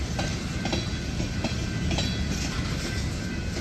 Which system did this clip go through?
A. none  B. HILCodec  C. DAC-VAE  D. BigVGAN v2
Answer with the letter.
A